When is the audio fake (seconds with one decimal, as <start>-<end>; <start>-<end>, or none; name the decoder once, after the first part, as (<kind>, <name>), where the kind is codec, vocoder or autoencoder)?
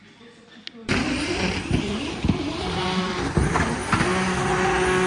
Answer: 0.8-3.6 (vocoder, BigVGAN v2)